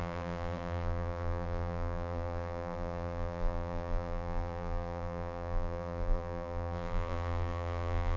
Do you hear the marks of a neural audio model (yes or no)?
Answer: yes